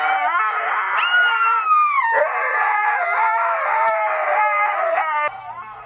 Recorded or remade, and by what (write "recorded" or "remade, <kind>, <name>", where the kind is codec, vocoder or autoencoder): recorded